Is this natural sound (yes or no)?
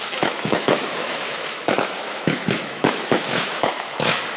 no